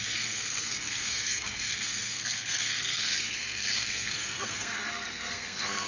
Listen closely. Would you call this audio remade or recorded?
remade